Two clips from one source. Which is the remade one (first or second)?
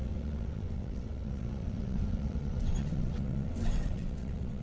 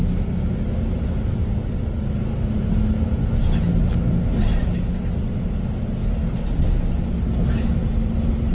first